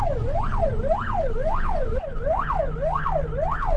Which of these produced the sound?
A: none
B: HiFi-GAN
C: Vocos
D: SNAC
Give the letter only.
A